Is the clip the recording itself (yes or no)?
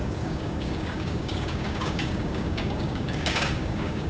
no